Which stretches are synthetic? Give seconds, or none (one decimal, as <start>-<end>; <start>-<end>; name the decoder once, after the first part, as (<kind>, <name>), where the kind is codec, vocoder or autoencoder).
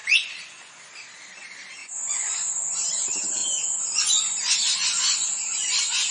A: 0.0-0.7 (vocoder, Vocos); 1.8-2.9; 3.4-6.1